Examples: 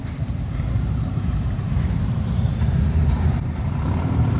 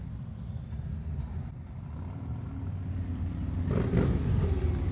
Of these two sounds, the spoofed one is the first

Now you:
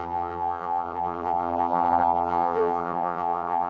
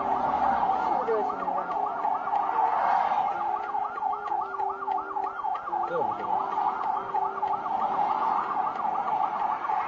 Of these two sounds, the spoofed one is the first